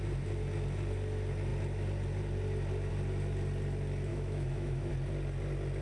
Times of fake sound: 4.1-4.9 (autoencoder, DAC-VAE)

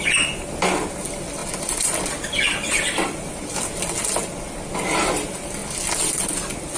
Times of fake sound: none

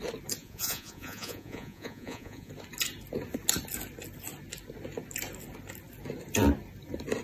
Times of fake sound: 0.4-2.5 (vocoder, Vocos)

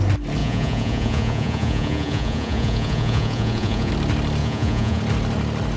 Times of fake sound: 0.4-3.9 (vocoder, Vocos); 4.4-5.0

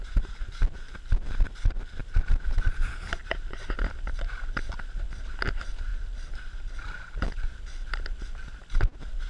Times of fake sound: 2.0-3.6 (vocoder, BigVGAN v2); 5.9-7.5